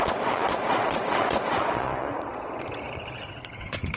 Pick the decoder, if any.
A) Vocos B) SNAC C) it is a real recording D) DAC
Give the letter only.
A